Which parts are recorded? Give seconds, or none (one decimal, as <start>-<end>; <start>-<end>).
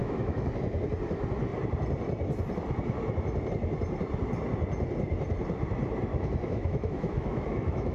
0.5-6.1